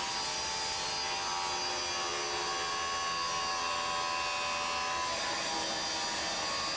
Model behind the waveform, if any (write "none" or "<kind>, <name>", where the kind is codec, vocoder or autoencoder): none